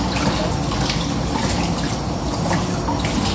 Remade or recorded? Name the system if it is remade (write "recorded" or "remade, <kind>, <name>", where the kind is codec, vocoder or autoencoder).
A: recorded